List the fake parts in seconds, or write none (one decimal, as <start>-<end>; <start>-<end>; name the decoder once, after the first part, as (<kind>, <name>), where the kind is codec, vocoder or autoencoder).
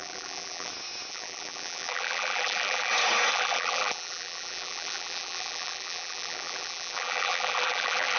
0.0-0.7 (vocoder, BigVGAN v2); 1.1-2.9; 3.3-8.2